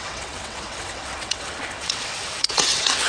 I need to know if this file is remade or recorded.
remade